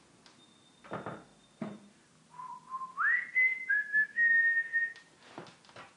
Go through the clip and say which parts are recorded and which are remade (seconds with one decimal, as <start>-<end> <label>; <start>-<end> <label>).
0.0-3.9 recorded; 3.9-4.4 remade; 4.4-6.0 recorded